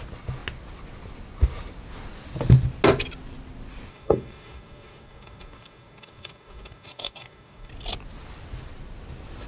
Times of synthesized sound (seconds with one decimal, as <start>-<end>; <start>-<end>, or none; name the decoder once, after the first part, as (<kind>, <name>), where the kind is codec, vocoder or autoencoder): 3.9-7.7 (codec, DAC)